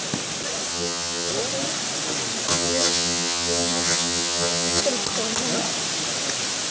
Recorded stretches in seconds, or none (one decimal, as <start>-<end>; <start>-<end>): 0.0-0.7; 1.3-2.5; 4.8-6.7